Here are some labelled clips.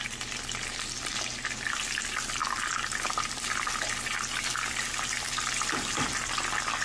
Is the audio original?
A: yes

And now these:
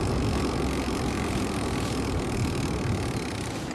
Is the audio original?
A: yes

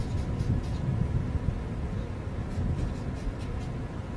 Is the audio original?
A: yes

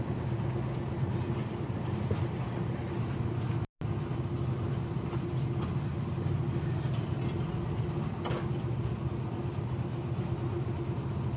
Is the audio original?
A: yes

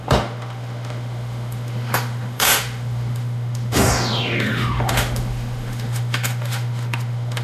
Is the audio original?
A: no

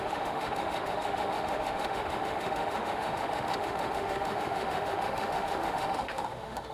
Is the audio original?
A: no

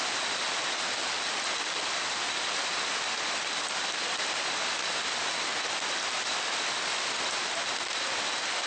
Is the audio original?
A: yes